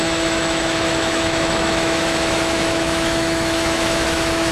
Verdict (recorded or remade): remade